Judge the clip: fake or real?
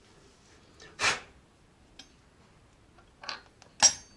real